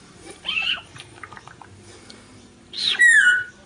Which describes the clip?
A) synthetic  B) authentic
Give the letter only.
A